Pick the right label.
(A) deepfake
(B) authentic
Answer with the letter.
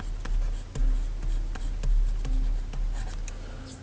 B